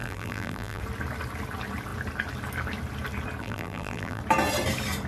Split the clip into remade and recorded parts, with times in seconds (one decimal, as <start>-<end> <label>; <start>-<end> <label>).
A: 0.0-0.8 remade; 0.8-3.4 recorded; 3.4-4.2 remade; 4.2-5.1 recorded